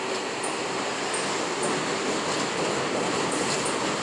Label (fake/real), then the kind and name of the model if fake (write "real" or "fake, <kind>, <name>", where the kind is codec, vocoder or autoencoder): real